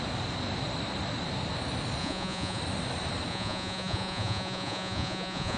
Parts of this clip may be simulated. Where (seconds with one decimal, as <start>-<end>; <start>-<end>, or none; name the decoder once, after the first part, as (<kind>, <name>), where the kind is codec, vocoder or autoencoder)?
2.0-2.6 (vocoder, Vocos); 3.3-5.6